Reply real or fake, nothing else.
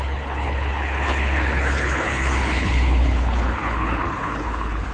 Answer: fake